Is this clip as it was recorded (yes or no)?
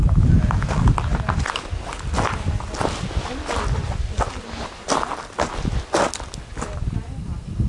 yes